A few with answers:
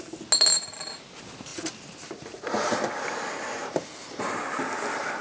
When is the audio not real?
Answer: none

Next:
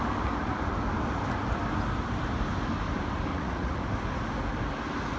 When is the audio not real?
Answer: 3.3-3.8 (vocoder, Vocos)

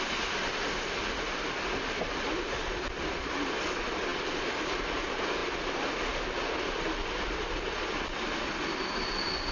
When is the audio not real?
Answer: 5.4-5.9 (vocoder, BigVGAN v2)